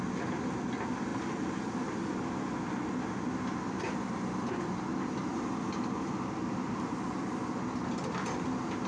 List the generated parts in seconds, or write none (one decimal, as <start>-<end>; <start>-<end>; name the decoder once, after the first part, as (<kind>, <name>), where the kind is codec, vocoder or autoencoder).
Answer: none